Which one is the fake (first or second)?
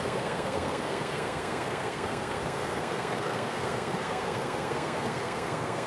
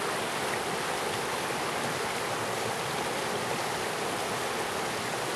first